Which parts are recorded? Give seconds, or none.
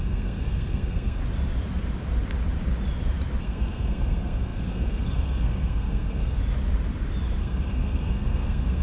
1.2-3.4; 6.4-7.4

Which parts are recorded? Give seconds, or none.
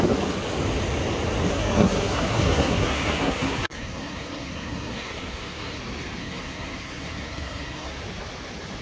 0.0-1.5; 5.8-6.2; 8.0-8.8